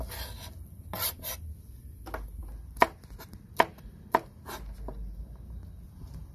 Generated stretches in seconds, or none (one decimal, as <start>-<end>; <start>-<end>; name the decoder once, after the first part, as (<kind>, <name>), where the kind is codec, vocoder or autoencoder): none